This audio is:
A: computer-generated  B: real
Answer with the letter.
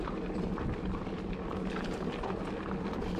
B